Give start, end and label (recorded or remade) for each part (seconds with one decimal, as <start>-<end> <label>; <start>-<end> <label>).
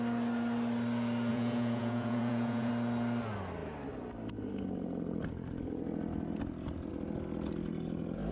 0.0-1.3 recorded; 1.3-2.7 remade; 2.7-8.3 recorded